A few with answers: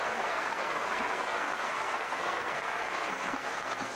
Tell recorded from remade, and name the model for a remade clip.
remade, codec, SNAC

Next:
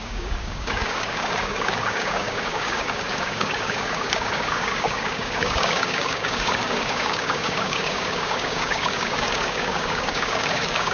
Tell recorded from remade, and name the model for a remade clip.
remade, codec, DAC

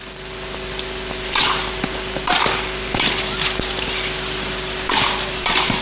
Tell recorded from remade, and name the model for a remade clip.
remade, vocoder, BigVGAN v2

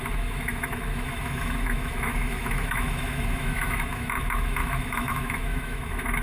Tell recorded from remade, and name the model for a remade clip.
remade, autoencoder, DAC-VAE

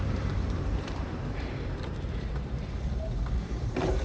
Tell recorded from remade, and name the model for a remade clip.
remade, vocoder, BigVGAN v2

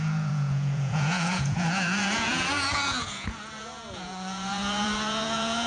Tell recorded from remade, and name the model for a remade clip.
remade, vocoder, Vocos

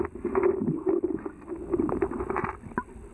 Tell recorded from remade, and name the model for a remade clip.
recorded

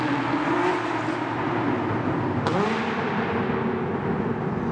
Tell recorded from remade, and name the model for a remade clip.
recorded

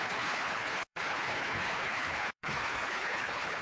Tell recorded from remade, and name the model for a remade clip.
remade, codec, HILCodec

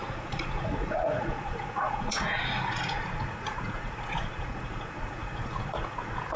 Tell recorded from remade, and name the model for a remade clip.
remade, vocoder, Vocos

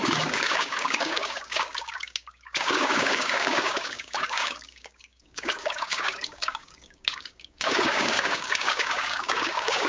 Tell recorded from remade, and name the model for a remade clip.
remade, codec, DAC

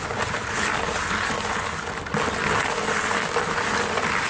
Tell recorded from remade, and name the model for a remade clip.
recorded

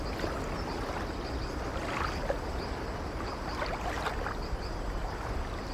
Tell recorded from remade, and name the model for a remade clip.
recorded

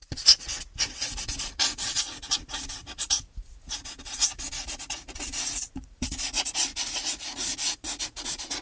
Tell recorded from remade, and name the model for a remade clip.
remade, vocoder, Vocos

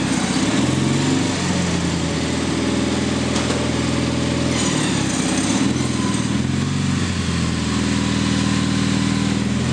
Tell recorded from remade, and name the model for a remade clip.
recorded